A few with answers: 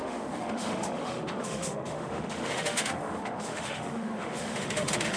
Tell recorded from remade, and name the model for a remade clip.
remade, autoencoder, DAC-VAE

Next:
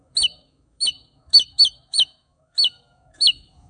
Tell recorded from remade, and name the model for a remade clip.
remade, autoencoder, DAC-VAE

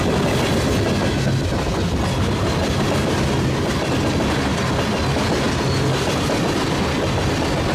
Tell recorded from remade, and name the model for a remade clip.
recorded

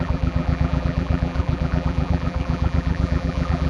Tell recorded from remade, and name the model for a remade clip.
remade, vocoder, BigVGAN v2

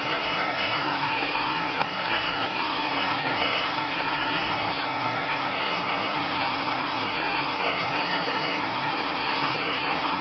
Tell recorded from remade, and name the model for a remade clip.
remade, codec, SNAC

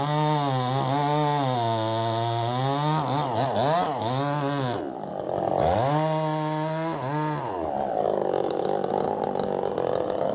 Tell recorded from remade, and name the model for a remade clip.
recorded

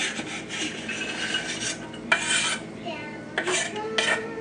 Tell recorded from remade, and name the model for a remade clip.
recorded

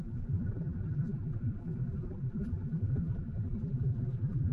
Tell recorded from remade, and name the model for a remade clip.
remade, vocoder, BigVGAN v2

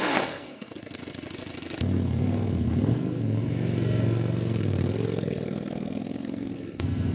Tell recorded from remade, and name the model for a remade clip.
remade, codec, SNAC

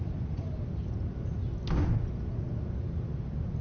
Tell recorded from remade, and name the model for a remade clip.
recorded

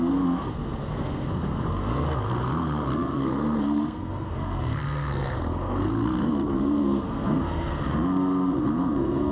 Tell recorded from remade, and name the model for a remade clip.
remade, codec, SNAC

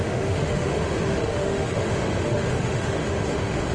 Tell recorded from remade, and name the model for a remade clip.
remade, autoencoder, DAC-VAE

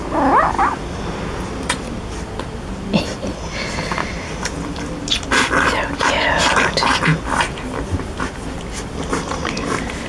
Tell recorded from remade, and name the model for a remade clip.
recorded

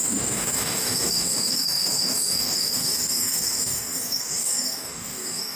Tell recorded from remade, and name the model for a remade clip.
remade, codec, DAC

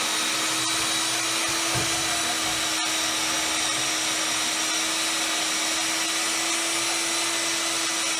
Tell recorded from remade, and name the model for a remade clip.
recorded